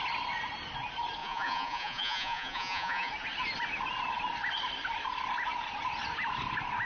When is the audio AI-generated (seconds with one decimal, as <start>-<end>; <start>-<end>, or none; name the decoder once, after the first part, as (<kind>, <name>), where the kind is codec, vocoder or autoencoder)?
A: 1.2-3.1 (vocoder, Vocos)